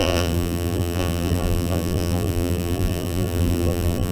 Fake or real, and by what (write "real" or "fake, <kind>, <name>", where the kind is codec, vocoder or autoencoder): fake, vocoder, BigVGAN v2